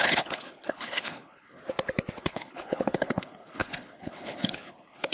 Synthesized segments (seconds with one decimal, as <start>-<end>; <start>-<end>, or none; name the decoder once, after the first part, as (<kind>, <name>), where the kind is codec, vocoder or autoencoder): 0.0-1.6 (codec, HILCodec); 2.2-5.1